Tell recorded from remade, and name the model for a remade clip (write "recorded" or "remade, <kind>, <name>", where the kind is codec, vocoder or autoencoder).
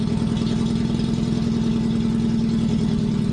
recorded